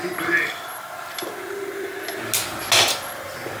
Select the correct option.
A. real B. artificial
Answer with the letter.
A